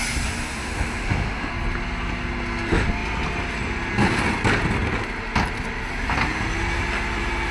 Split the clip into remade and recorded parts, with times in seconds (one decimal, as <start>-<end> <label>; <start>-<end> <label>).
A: 0.0-0.6 recorded; 0.6-1.5 remade; 1.5-7.5 recorded